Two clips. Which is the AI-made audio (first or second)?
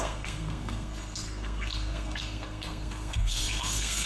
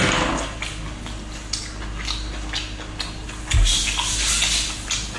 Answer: first